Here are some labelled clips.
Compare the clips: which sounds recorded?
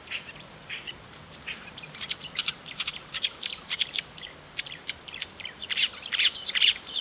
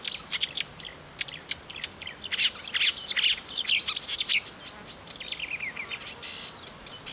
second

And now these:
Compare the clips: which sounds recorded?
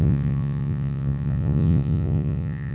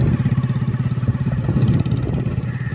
second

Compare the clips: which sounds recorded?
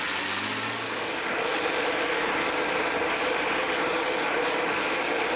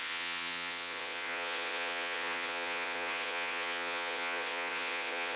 first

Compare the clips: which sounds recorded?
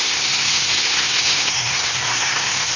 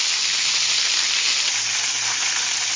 second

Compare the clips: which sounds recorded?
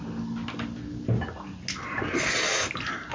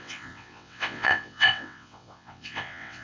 first